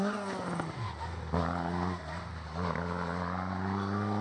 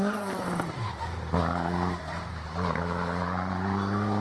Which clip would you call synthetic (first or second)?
second